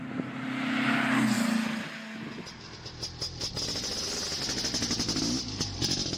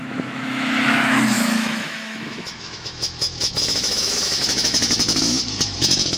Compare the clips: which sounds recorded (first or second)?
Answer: first